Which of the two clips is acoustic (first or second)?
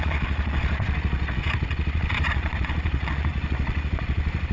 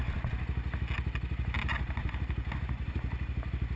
second